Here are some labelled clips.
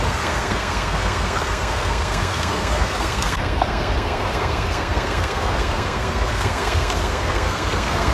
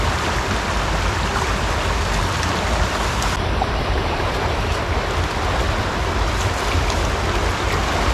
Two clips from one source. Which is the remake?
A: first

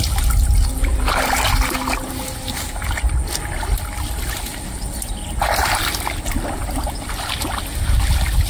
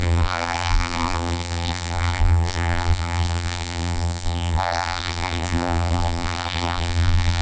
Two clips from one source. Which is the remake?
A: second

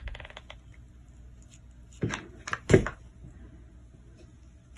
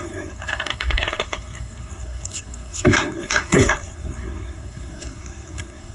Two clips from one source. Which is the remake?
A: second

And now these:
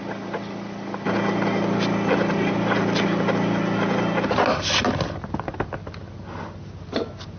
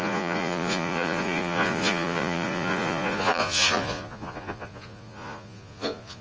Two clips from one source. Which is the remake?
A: second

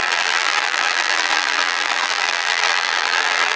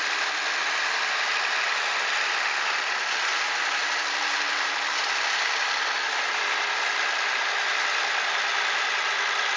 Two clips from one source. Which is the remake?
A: first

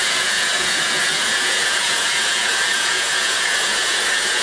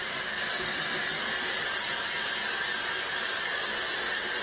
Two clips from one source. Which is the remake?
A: first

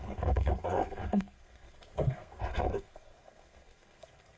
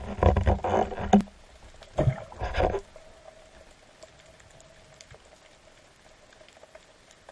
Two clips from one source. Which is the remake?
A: first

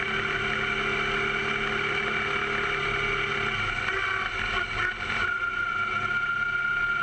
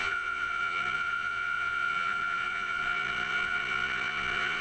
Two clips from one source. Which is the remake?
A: second